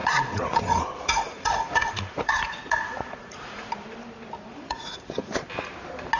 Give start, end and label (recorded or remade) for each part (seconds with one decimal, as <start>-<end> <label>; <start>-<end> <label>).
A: 0.0-3.7 remade; 3.7-4.5 recorded; 4.5-5.4 remade; 5.4-6.2 recorded